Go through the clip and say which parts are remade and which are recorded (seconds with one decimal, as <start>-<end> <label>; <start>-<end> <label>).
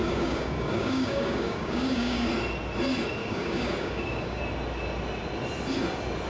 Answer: 0.0-2.3 remade; 2.3-3.2 recorded; 3.2-4.4 remade; 4.4-6.3 recorded